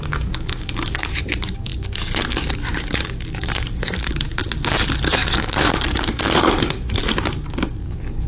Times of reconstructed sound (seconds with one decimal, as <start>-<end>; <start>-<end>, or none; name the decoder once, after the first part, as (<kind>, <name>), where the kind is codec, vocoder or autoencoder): 0.0-4.4 (codec, DAC); 5.0-7.0; 7.5-8.3